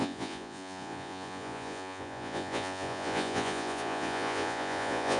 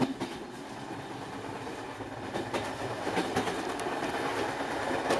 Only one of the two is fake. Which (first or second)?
first